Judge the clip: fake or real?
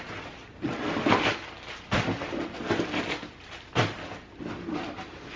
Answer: real